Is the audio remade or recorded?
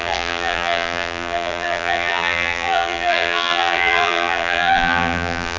remade